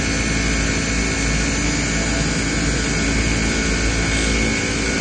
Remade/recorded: recorded